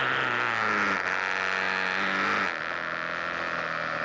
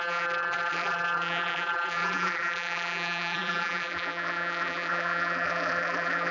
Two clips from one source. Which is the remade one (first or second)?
second